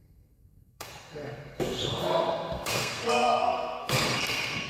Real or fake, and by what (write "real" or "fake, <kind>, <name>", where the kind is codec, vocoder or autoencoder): fake, codec, SNAC